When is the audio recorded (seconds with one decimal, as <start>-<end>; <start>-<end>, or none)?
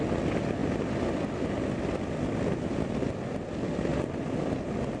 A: 0.0-5.0